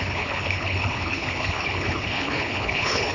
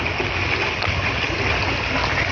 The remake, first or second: first